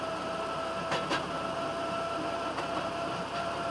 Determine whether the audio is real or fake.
real